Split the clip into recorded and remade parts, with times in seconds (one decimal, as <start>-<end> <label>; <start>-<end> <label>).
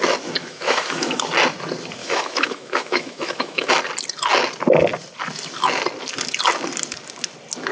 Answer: 0.0-0.4 recorded; 0.4-1.2 remade; 1.2-2.0 recorded; 2.0-3.7 remade; 3.7-7.7 recorded